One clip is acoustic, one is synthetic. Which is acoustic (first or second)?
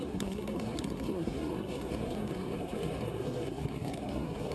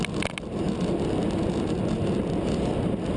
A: second